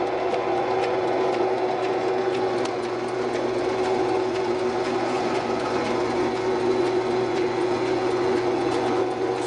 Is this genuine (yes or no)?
no